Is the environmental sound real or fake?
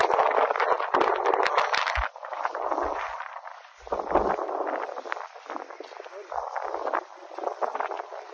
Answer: real